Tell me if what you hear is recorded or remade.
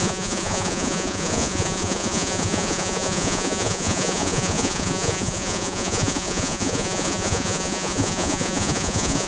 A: remade